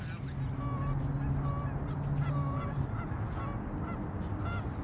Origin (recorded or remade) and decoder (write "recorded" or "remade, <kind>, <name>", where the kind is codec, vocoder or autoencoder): recorded